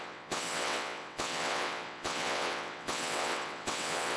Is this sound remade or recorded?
remade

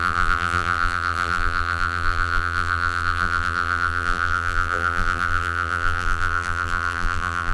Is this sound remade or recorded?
remade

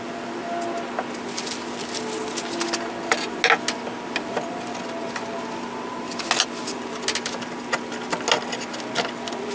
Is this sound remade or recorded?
recorded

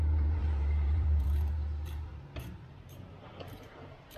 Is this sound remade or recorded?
remade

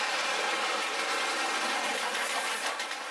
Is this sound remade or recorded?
recorded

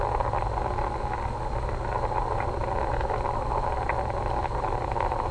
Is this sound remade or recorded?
recorded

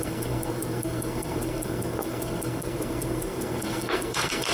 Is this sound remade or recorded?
remade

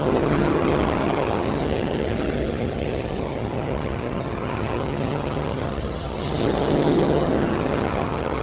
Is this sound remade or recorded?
remade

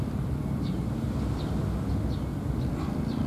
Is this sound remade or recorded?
recorded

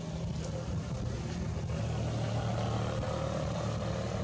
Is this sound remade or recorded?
recorded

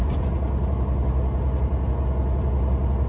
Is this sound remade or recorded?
recorded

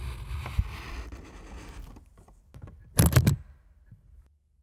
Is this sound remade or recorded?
recorded